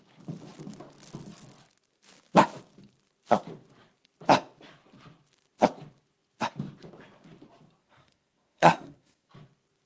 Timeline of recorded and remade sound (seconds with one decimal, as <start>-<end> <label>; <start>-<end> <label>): 0.0-7.8 recorded; 7.8-9.3 remade; 9.3-9.9 recorded

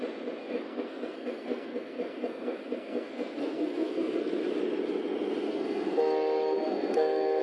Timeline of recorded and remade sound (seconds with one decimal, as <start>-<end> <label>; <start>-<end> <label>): 0.0-0.4 recorded; 0.4-4.4 remade; 4.4-5.5 recorded; 5.5-7.4 remade

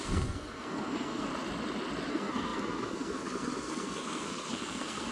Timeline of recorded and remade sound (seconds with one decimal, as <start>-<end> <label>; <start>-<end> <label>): 0.0-1.3 remade; 1.3-2.1 recorded; 2.1-5.1 remade

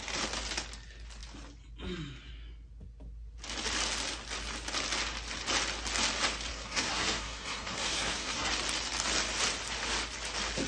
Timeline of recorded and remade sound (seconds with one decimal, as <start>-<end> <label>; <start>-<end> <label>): 0.0-6.5 recorded; 6.5-8.5 remade; 8.5-10.7 recorded

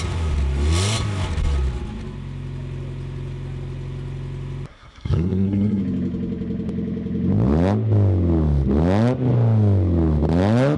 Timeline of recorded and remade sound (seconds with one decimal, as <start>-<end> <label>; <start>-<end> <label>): 0.0-4.7 recorded; 4.7-5.8 remade; 5.8-10.8 recorded

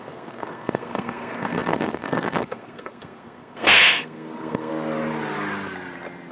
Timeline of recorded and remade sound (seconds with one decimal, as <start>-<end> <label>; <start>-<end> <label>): 0.0-4.7 remade; 4.7-6.3 recorded

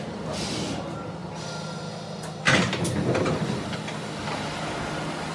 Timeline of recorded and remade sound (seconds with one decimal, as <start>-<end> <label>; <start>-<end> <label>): 0.0-5.3 recorded

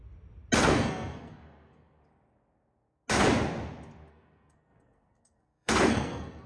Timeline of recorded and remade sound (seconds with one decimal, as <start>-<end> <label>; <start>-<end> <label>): 0.0-0.6 recorded; 0.6-2.0 remade; 2.0-4.1 recorded; 4.1-6.5 remade